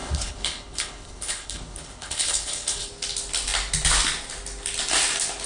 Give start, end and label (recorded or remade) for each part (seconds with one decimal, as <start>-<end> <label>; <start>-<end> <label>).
0.0-2.9 remade; 2.9-5.5 recorded